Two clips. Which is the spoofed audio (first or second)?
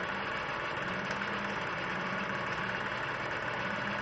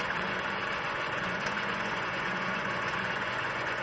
second